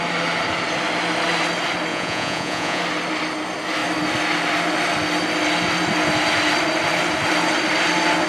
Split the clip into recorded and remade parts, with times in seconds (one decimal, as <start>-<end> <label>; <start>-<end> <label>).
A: 0.0-1.9 recorded; 1.9-2.8 remade; 2.8-8.3 recorded